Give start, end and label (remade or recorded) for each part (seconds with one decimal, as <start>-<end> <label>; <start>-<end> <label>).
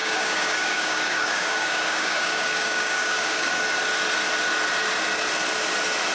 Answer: 0.0-3.5 remade; 3.5-6.1 recorded